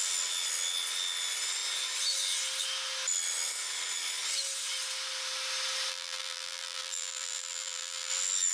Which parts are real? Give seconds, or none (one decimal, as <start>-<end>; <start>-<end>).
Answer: 0.0-5.9; 8.1-8.5